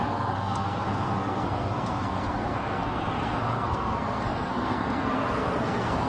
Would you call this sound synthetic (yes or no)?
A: yes